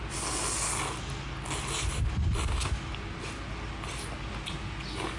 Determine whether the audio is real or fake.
real